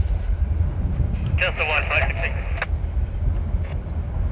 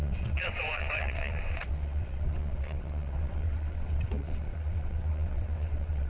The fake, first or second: second